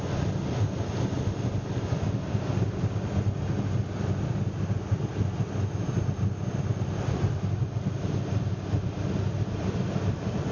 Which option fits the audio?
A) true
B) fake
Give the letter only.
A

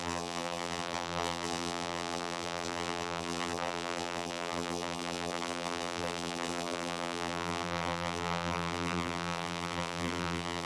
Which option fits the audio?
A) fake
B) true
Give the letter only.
A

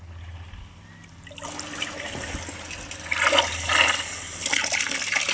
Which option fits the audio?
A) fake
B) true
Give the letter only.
B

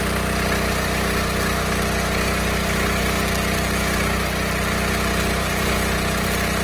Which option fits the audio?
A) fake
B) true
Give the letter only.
B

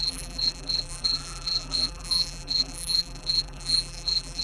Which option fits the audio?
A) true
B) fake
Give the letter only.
B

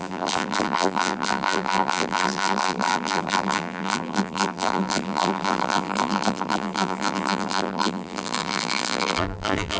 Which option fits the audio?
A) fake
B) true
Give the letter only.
A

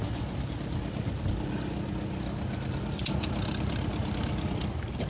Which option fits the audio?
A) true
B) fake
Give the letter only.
A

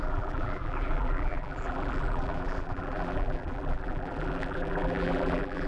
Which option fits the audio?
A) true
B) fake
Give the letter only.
B